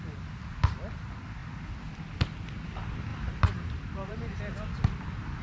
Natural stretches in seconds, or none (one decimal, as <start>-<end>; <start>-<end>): 0.0-3.1; 4.4-5.4